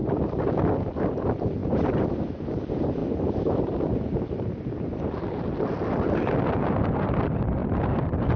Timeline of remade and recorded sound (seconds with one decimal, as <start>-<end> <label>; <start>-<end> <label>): 0.0-0.5 remade; 0.5-1.6 recorded; 1.6-2.5 remade; 2.5-3.0 recorded; 3.0-5.0 remade; 5.0-7.6 recorded; 7.6-8.4 remade